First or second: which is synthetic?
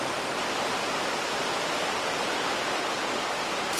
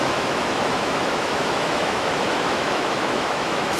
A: second